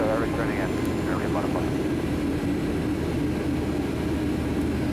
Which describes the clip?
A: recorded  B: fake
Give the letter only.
A